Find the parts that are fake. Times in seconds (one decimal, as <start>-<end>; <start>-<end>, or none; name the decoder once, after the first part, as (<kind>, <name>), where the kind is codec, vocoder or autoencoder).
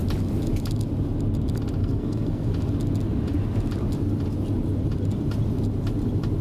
1.8-2.5 (codec, SNAC)